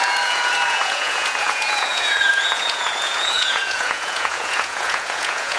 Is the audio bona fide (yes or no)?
no